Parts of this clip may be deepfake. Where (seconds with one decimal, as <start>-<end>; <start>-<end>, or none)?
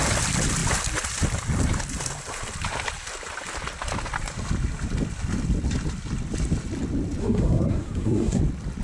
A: 7.2-8.4